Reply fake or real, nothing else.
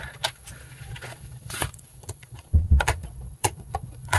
fake